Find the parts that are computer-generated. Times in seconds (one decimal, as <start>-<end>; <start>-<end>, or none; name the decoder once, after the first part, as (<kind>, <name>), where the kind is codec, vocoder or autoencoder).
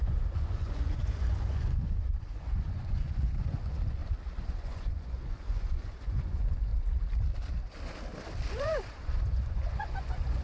0.0-4.0 (vocoder, Vocos); 4.5-6.7; 8.5-10.4